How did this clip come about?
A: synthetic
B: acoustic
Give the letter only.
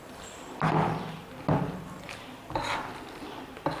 B